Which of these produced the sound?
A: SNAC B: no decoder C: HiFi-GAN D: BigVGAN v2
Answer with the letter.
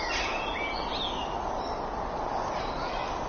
B